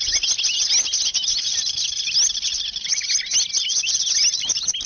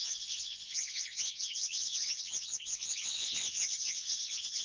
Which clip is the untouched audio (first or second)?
first